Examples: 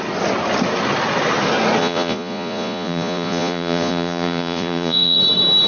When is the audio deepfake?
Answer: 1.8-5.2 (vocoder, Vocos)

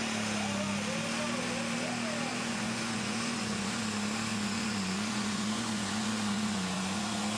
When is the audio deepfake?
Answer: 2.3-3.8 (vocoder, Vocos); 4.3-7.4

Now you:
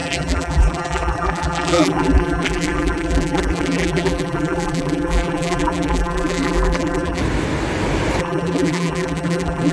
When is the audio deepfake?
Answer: 0.0-7.2 (vocoder, BigVGAN v2); 8.2-9.7

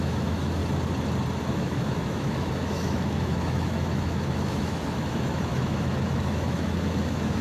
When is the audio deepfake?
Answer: 0.0-0.6 (autoencoder, DAC-VAE); 1.5-7.4

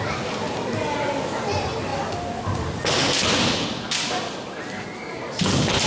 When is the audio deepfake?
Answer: none

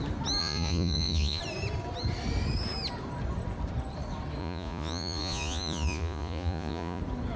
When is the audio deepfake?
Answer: 0.4-1.4 (vocoder, Vocos); 4.4-7.0